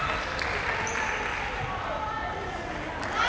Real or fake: real